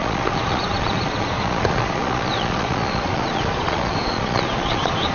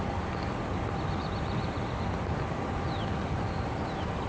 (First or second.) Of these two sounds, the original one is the second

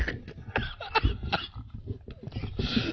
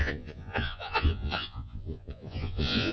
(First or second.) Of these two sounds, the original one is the first